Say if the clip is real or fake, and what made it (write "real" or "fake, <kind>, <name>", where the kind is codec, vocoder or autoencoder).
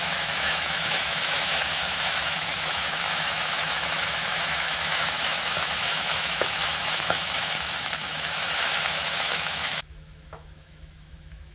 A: fake, autoencoder, DAC-VAE